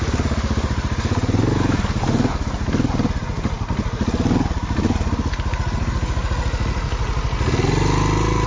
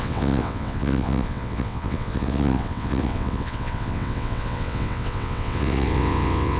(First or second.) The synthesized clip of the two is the second